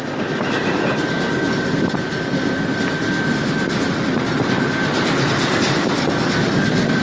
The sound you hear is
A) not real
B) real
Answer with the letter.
B